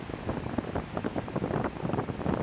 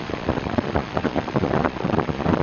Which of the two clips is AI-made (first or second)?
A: second